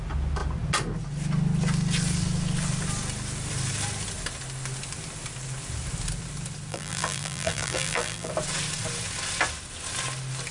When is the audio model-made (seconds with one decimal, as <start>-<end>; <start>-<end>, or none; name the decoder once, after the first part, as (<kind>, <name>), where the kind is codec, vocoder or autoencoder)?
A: 6.7-8.3 (vocoder, BigVGAN v2)